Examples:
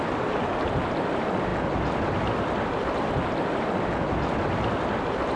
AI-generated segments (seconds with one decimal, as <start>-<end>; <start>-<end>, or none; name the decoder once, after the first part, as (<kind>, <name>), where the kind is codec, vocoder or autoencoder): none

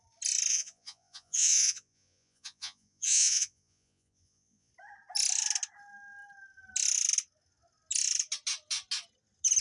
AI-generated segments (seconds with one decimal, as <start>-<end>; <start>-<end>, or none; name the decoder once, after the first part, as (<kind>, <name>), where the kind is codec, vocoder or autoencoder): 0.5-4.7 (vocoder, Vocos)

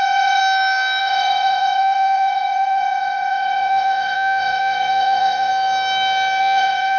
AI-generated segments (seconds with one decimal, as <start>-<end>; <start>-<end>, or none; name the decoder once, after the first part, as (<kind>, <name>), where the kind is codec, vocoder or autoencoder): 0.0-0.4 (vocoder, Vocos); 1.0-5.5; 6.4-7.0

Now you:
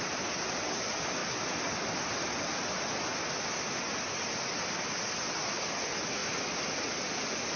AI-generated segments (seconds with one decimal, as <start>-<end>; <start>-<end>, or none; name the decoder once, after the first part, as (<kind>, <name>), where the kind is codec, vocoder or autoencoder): none

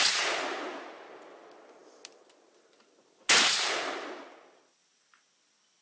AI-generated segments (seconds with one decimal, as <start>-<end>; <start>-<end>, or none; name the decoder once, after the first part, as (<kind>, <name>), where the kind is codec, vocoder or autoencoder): none

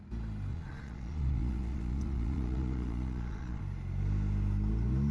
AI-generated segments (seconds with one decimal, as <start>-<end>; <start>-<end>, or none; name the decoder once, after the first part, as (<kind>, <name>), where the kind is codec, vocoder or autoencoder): 0.5-3.6 (vocoder, Vocos)

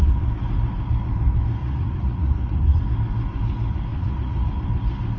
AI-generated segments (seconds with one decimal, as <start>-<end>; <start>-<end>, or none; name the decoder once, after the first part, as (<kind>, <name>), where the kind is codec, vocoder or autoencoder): 1.6-2.8 (vocoder, Vocos); 3.9-4.5

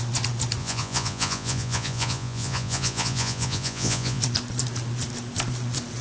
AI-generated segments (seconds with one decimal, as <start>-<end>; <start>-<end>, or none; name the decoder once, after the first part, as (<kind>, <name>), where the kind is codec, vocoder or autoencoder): 0.6-4.2 (vocoder, Vocos)